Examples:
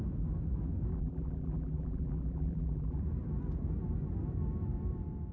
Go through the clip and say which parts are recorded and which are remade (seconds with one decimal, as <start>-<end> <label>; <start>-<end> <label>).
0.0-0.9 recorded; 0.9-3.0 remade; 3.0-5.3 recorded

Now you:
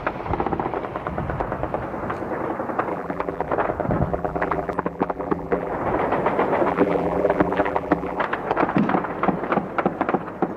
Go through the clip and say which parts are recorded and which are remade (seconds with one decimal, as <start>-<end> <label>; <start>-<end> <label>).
0.0-2.9 recorded; 2.9-3.5 remade; 3.5-4.1 recorded; 4.1-5.7 remade; 5.7-6.7 recorded; 6.7-8.2 remade; 8.2-10.6 recorded

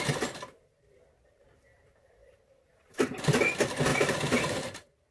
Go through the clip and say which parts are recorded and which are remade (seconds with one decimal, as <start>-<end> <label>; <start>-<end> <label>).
0.0-2.2 recorded; 2.2-3.2 remade; 3.2-3.9 recorded; 3.9-5.1 remade

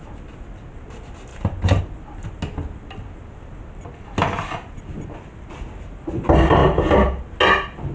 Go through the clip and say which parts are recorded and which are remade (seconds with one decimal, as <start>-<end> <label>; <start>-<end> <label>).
0.0-1.3 recorded; 1.3-1.8 remade; 1.8-7.9 recorded